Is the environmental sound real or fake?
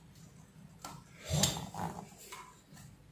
real